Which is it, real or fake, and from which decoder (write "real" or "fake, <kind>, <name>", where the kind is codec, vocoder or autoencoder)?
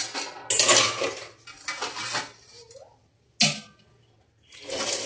real